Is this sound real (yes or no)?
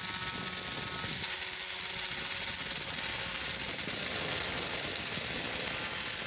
yes